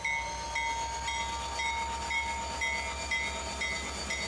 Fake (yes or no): no